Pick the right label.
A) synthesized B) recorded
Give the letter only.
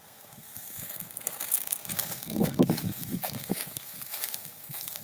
A